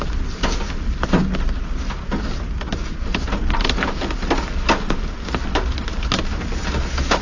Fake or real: real